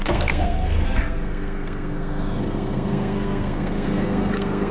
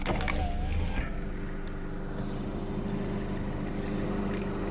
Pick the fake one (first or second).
first